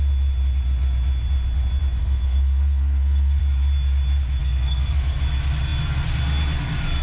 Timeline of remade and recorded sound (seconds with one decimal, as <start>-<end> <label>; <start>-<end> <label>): 0.0-2.0 recorded; 2.0-3.4 remade; 3.4-4.4 recorded; 4.4-5.2 remade; 5.2-7.0 recorded